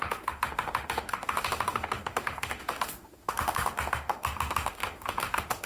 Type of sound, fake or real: fake